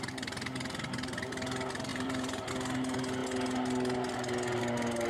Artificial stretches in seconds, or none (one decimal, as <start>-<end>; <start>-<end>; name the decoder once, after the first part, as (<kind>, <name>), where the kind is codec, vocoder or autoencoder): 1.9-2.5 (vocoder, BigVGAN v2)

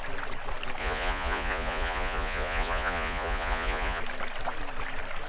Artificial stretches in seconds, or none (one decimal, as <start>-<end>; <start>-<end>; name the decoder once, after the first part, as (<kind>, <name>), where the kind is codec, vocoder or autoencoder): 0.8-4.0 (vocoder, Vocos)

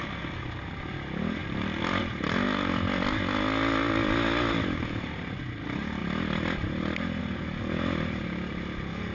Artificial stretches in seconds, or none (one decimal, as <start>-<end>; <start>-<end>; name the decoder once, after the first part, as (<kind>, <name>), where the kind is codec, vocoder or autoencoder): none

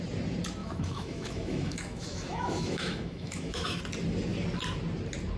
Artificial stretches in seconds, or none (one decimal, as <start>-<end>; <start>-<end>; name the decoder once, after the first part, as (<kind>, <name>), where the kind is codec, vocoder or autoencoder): 0.6-3.8 (autoencoder, DAC-VAE)

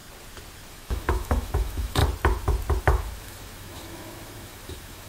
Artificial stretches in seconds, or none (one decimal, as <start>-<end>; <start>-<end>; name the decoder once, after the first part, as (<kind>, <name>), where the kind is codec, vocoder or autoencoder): 0.7-2.0 (autoencoder, DAC-VAE); 2.8-5.1

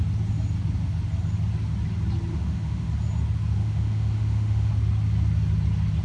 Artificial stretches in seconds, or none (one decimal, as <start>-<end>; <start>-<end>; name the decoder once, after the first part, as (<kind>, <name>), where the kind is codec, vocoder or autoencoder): 2.3-2.9 (autoencoder, DAC-VAE); 3.6-4.7

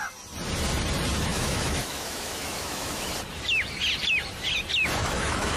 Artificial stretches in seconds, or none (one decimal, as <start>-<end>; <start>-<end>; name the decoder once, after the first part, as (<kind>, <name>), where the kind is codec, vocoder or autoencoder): 1.3-3.1 (autoencoder, DAC-VAE); 5.0-5.6